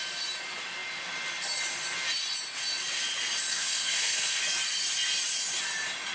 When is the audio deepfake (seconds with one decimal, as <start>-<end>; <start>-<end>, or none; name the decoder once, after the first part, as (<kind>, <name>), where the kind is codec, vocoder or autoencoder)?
3.5-4.4 (codec, SNAC)